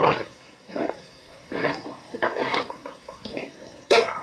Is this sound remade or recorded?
remade